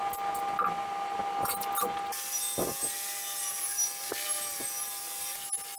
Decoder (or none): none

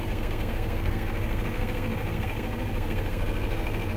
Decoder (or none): codec, SNAC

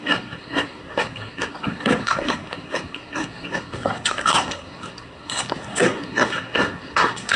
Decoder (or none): codec, SNAC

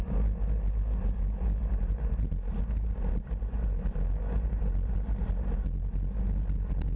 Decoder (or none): none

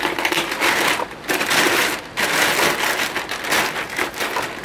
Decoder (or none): none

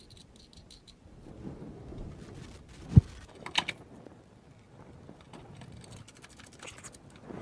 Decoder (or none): none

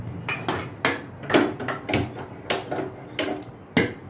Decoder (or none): none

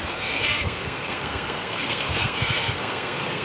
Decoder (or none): codec, SNAC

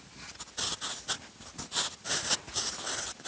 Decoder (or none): none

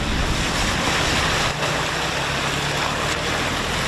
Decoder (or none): none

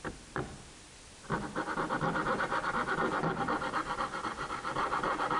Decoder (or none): none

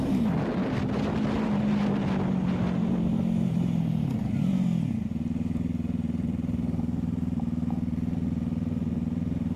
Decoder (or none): none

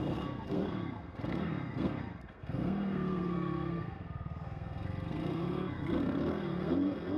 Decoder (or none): codec, SNAC